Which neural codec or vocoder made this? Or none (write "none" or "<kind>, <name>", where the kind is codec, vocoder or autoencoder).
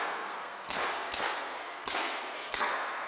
codec, SNAC